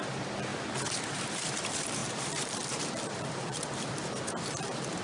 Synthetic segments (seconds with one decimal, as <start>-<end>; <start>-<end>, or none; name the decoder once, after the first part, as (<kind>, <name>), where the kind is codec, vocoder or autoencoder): 0.0-0.5 (vocoder, BigVGAN v2); 1.0-5.0